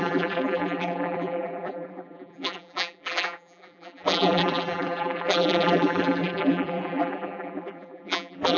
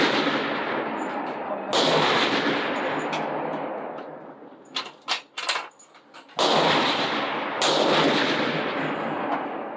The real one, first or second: second